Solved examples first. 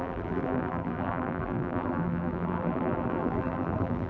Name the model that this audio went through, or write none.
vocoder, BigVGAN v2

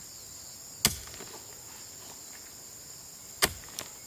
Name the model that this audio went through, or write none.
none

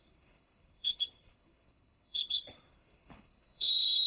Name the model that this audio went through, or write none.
codec, HILCodec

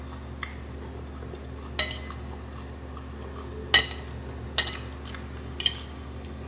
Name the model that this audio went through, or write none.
none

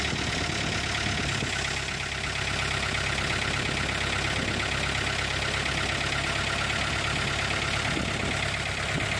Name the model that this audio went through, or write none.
none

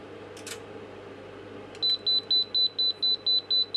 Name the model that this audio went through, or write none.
none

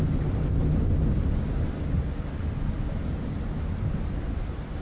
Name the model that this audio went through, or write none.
none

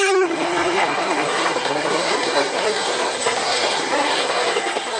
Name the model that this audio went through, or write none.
codec, SNAC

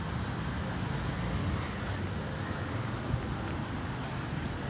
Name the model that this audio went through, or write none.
none